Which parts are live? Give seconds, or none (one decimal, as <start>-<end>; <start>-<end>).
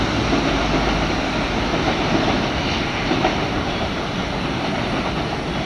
0.0-1.7; 5.1-5.7